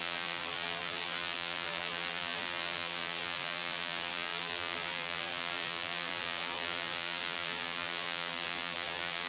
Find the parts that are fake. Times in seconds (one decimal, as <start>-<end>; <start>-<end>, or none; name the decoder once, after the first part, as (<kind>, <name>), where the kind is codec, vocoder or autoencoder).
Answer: 0.0-9.3 (vocoder, BigVGAN v2)